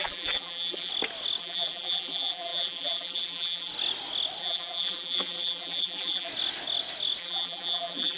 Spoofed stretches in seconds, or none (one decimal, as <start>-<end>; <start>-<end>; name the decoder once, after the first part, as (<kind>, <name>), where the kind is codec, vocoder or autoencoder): 0.0-0.9 (vocoder, BigVGAN v2); 1.4-3.7; 4.4-6.3; 7.2-8.2